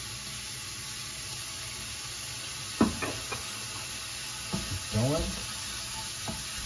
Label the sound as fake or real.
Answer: real